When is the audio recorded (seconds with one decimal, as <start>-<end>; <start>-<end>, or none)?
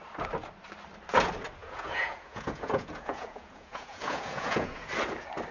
0.0-1.6; 4.9-5.5